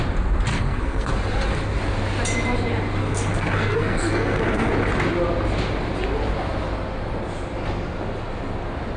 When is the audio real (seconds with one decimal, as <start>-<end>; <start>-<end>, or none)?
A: 0.0-0.5; 1.1-3.0; 4.7-9.0